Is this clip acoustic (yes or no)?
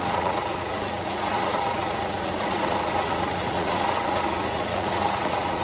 no